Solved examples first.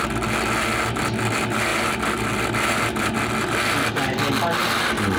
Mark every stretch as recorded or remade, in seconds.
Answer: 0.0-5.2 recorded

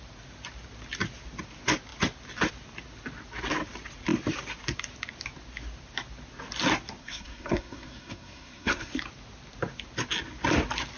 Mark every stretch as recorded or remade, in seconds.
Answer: 0.0-7.0 recorded; 7.0-8.9 remade; 8.9-11.0 recorded

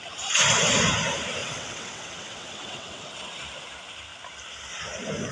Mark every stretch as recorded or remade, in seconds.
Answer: 0.0-1.4 recorded; 1.4-3.1 remade; 3.1-5.3 recorded

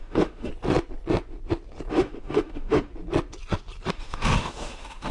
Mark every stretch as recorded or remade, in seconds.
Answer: 0.0-0.5 remade; 0.5-1.9 recorded; 1.9-2.9 remade; 2.9-3.9 recorded; 3.9-5.1 remade

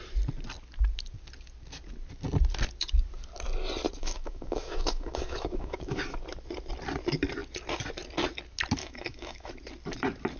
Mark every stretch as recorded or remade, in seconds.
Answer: 0.0-4.0 recorded; 4.0-6.0 remade; 6.0-8.8 recorded; 8.8-9.5 remade; 9.5-10.4 recorded

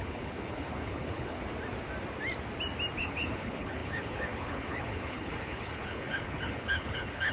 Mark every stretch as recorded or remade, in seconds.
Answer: 0.0-1.4 remade; 1.4-3.0 recorded; 3.0-7.3 remade

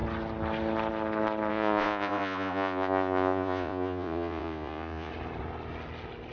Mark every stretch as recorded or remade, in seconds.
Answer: 0.0-1.5 recorded; 1.5-5.1 remade; 5.1-6.3 recorded

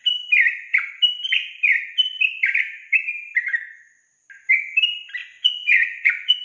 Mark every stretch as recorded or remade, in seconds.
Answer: 0.0-5.2 recorded; 5.2-6.4 remade